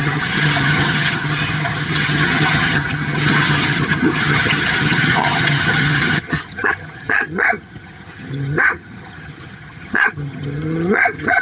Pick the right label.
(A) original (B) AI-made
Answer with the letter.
B